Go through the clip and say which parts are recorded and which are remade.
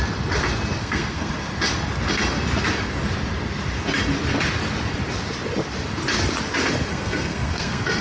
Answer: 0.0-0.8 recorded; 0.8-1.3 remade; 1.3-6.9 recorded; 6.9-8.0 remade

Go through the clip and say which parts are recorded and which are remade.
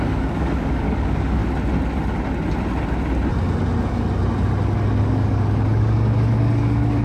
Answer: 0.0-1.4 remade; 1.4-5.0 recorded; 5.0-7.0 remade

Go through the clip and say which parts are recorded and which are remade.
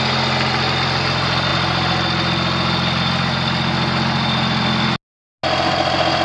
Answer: 0.0-6.2 recorded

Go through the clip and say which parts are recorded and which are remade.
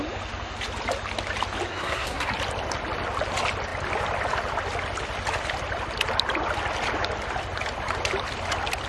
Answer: 0.0-1.7 recorded; 1.7-2.3 remade; 2.3-8.9 recorded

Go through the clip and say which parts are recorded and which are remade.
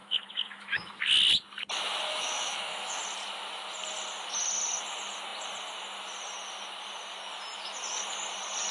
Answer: 0.0-1.0 remade; 1.0-2.1 recorded; 2.1-3.0 remade; 3.0-8.7 recorded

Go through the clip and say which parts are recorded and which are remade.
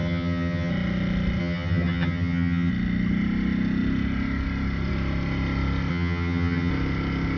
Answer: 0.0-0.7 remade; 0.7-1.4 recorded; 1.4-2.7 remade; 2.7-5.9 recorded; 5.9-6.7 remade; 6.7-7.4 recorded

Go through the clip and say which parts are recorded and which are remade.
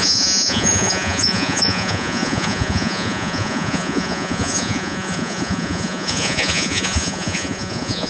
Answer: 0.0-8.1 remade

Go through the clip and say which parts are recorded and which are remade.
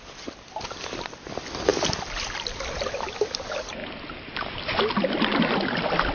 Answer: 0.0-6.1 recorded